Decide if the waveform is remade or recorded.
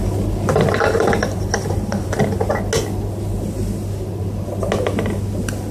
recorded